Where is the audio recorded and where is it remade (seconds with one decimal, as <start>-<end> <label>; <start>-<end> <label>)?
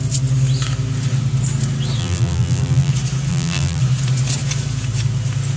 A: 0.0-2.0 recorded; 2.0-2.9 remade; 2.9-3.3 recorded; 3.3-3.8 remade; 3.8-5.6 recorded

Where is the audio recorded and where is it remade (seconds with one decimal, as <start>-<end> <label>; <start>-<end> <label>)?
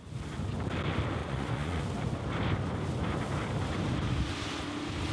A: 0.0-1.2 recorded; 1.2-1.8 remade; 1.8-5.1 recorded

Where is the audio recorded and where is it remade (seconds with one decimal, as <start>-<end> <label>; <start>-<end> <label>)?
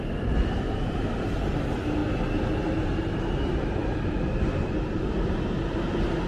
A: 0.0-6.3 recorded